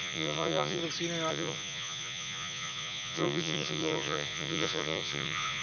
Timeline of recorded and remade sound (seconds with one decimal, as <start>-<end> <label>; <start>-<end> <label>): 0.0-0.8 remade; 0.8-1.3 recorded; 1.3-5.6 remade